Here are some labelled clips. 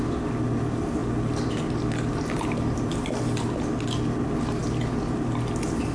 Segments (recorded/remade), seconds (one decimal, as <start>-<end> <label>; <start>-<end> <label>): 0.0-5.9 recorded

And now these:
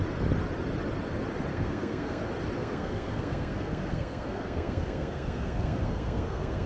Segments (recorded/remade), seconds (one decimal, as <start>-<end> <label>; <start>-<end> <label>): 0.0-1.5 recorded; 1.5-2.2 remade; 2.2-2.6 recorded; 2.6-6.7 remade

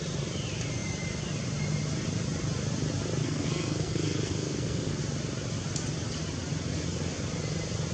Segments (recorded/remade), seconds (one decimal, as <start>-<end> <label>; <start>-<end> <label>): 0.0-3.2 recorded; 3.2-5.0 remade; 5.0-7.9 recorded

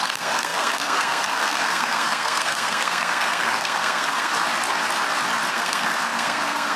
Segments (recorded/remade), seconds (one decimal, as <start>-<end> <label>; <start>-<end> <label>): 0.0-4.3 remade; 4.3-5.5 recorded; 5.5-6.8 remade

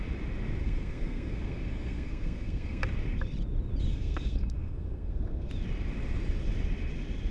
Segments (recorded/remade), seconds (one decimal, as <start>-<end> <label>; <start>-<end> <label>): 0.0-0.6 recorded; 0.6-2.8 remade; 2.8-3.9 recorded; 3.9-5.5 remade; 5.5-7.3 recorded

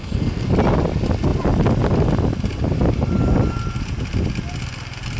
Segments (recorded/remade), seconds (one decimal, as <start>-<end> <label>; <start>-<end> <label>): 0.0-0.5 remade; 0.5-5.2 recorded

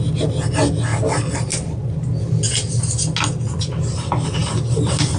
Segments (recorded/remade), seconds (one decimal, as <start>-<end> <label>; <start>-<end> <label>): 0.0-5.2 recorded